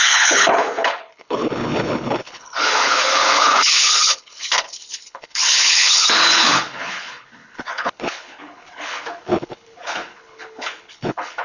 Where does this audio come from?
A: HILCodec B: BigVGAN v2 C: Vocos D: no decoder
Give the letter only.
A